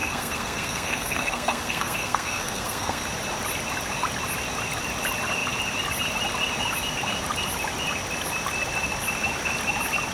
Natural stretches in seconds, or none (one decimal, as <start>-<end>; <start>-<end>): 3.0-10.1